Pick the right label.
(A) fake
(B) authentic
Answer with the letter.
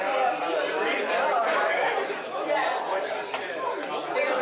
B